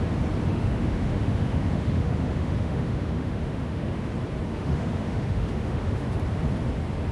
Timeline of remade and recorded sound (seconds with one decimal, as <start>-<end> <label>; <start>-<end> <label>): 0.0-0.5 recorded; 0.5-4.1 remade; 4.1-4.5 recorded; 4.5-6.2 remade; 6.2-7.1 recorded